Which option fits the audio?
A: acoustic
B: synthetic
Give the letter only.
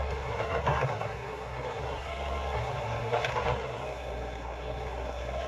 B